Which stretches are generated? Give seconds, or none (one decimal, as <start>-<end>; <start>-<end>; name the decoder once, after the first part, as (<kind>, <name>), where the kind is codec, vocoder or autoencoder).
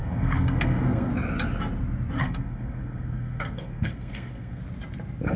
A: 0.0-1.1 (codec, SNAC); 2.2-4.6